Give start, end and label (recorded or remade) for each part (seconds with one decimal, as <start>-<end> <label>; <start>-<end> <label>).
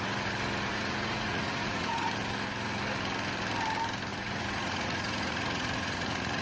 0.0-0.7 recorded; 0.7-2.1 remade; 2.1-4.1 recorded; 4.1-6.4 remade